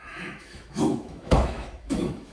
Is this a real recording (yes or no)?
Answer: no